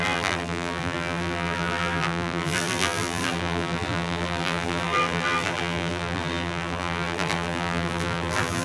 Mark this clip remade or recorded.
remade